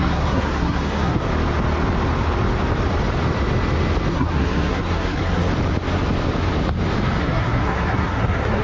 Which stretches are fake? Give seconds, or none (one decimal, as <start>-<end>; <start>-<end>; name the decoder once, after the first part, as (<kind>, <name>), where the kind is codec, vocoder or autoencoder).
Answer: 0.0-1.3 (codec, SNAC); 4.1-5.5; 7.2-8.6